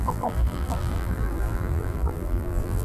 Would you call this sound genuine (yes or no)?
no